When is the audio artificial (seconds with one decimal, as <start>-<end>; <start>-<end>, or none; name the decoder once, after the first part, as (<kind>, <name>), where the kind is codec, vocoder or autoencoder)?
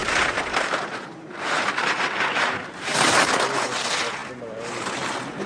0.0-3.3 (vocoder, BigVGAN v2)